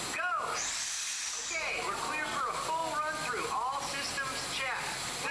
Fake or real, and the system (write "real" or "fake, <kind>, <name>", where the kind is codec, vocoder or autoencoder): real